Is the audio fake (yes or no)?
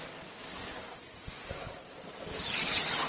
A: no